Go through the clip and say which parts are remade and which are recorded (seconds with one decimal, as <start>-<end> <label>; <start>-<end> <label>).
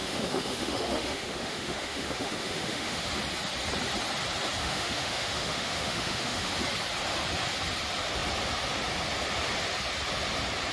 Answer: 0.0-3.1 remade; 3.1-4.6 recorded; 4.6-6.5 remade; 6.5-10.7 recorded